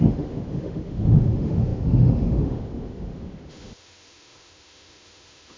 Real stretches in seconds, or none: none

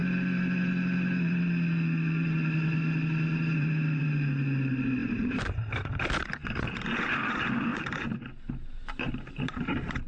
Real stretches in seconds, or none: 0.0-5.0; 5.9-7.7

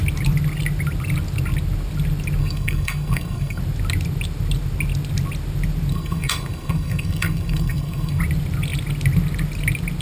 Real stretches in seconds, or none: 0.0-2.4; 3.6-5.9; 8.2-10.0